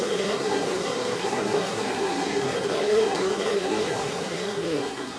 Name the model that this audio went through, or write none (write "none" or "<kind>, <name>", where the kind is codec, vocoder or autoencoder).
codec, SNAC